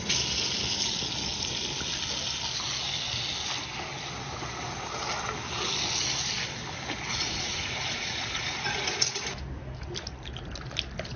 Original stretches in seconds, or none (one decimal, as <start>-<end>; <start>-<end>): 0.0-7.1; 9.2-11.2